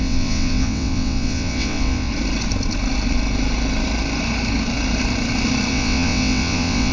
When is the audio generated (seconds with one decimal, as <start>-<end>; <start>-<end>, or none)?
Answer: 0.0-2.1; 5.7-6.9